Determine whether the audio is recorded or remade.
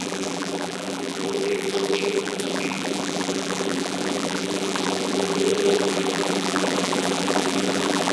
remade